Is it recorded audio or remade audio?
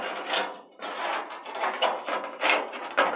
recorded